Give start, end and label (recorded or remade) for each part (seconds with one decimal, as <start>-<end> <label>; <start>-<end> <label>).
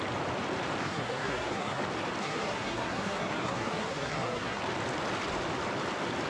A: 0.0-0.8 recorded; 0.8-1.8 remade; 1.8-2.2 recorded; 2.2-4.6 remade; 4.6-6.3 recorded